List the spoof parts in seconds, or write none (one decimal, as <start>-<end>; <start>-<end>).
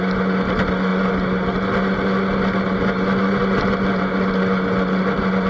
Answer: none